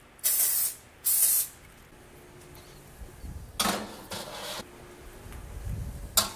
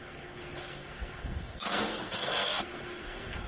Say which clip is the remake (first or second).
second